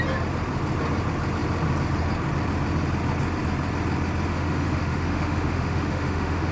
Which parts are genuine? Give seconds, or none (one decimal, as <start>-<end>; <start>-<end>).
0.0-4.3